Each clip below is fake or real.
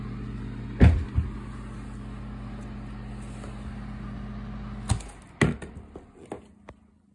real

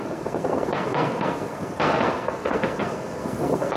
fake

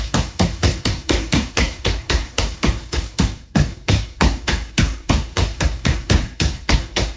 fake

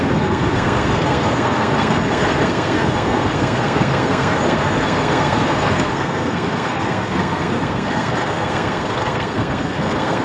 fake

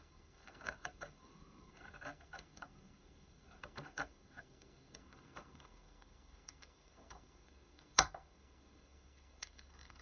fake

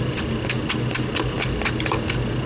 real